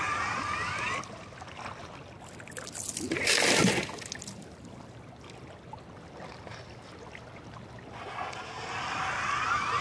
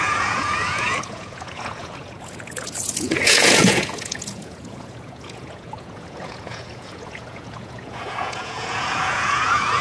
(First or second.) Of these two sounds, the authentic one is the first